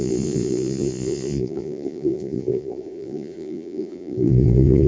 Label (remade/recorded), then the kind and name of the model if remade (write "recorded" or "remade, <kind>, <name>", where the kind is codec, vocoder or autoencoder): remade, vocoder, Vocos